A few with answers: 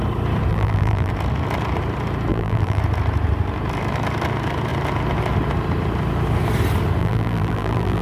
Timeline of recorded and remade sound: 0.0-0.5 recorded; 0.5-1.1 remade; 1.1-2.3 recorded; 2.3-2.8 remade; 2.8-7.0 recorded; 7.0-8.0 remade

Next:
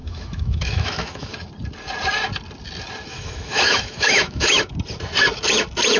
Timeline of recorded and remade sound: 0.0-1.3 remade; 1.3-3.1 recorded; 3.1-4.7 remade; 4.7-6.0 recorded

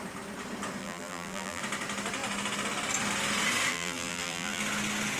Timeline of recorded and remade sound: 0.0-0.8 recorded; 0.8-1.6 remade; 1.6-3.7 recorded; 3.7-4.6 remade; 4.6-5.2 recorded

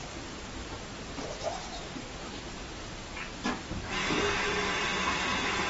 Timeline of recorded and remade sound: 0.0-5.7 recorded

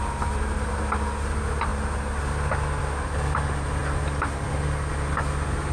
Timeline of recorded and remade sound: 0.0-5.7 recorded

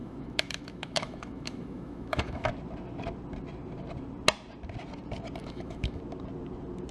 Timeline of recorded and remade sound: 0.0-2.5 remade; 2.5-5.4 recorded; 5.4-6.0 remade; 6.0-6.9 recorded

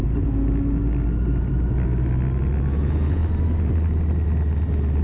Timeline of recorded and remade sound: 0.0-2.7 recorded; 2.7-3.2 remade; 3.2-5.0 recorded